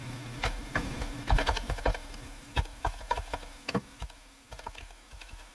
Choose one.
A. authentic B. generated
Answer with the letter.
B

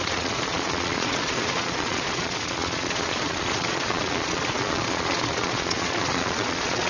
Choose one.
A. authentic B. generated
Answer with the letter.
B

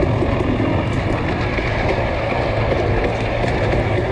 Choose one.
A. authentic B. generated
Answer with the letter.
A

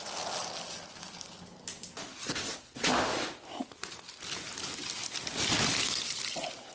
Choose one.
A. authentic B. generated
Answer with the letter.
A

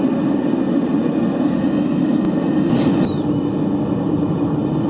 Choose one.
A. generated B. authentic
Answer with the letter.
B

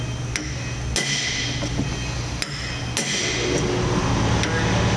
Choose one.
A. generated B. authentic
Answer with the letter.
B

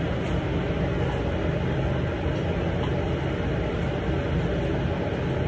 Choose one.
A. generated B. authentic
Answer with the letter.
B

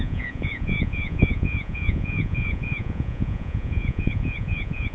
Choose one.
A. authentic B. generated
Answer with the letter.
B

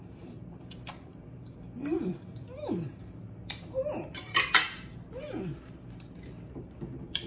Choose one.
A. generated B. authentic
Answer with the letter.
A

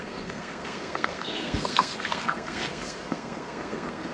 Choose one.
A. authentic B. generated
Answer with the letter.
B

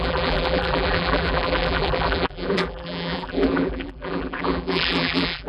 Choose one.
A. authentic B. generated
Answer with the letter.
B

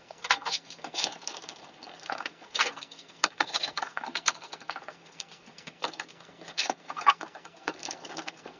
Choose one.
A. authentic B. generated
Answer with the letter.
B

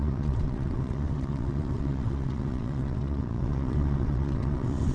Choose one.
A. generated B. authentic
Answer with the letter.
A